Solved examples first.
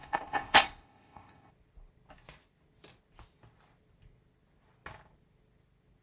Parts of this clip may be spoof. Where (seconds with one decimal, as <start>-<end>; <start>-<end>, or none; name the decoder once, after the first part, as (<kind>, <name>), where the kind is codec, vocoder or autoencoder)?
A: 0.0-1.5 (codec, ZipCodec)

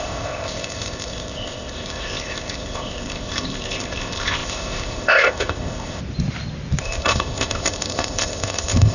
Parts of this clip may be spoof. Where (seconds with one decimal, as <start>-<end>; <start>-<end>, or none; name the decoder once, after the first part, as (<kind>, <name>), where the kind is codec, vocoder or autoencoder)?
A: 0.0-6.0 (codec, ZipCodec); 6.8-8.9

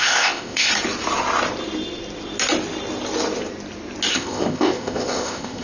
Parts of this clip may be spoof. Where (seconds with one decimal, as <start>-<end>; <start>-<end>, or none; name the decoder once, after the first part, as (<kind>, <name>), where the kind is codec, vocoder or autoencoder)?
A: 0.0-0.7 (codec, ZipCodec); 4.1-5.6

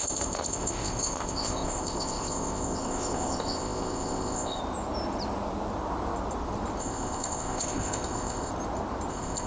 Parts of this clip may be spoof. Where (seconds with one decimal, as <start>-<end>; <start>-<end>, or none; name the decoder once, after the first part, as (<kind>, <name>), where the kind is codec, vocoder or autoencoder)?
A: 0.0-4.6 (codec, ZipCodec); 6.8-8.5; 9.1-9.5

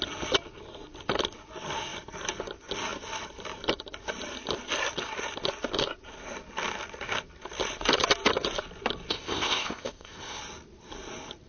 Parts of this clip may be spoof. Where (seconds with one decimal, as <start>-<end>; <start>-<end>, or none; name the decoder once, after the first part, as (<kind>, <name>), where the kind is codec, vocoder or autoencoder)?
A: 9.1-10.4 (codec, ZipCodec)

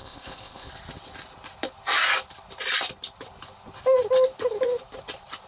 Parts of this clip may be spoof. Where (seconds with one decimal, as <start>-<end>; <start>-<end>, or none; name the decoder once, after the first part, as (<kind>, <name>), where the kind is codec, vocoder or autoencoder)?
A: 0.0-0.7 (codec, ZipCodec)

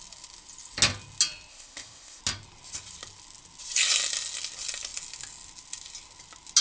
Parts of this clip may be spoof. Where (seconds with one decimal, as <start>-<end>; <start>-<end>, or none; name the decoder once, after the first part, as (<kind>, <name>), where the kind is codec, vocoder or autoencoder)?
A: 1.5-2.2 (codec, ZipCodec)